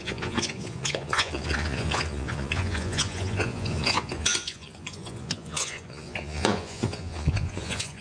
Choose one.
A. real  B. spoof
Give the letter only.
B